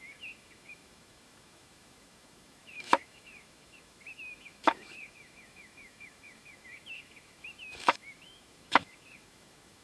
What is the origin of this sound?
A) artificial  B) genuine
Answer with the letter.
A